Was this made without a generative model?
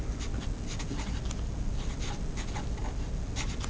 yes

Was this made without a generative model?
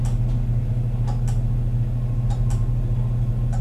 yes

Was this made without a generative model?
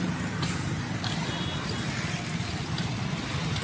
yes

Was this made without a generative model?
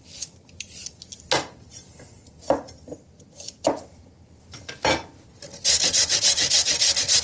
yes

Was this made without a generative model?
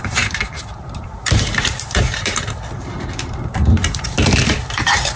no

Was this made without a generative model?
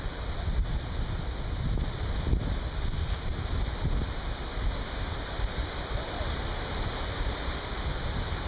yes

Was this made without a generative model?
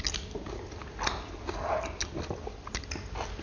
yes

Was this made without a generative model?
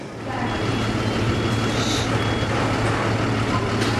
yes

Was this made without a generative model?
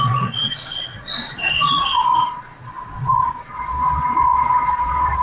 no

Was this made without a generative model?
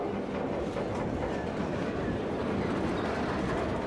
yes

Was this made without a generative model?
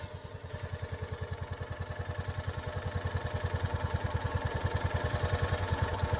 yes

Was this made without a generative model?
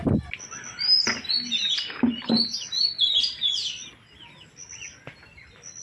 yes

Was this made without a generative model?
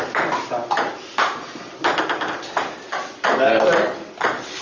yes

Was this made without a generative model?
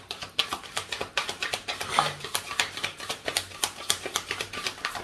no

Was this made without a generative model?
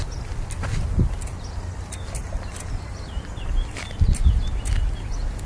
yes